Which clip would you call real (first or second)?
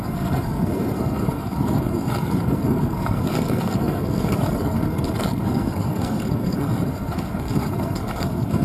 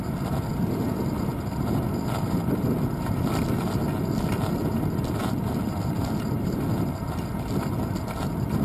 second